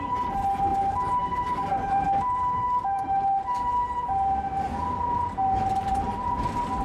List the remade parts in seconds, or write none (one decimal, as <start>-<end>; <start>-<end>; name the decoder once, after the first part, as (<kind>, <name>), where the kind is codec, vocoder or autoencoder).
0.7-3.0 (vocoder, BigVGAN v2)